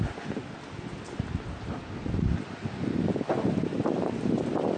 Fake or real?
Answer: real